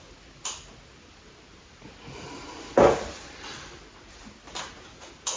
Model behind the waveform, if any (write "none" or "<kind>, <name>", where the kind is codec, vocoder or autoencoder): none